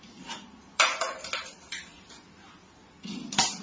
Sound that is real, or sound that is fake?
fake